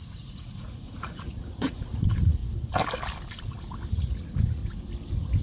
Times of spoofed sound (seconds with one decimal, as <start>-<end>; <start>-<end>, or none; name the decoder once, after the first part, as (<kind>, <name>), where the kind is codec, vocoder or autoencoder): 0.0-2.4 (vocoder, Vocos); 3.9-4.6